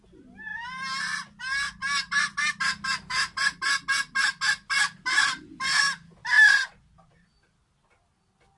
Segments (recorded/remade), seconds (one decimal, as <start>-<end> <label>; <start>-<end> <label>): 0.0-8.6 recorded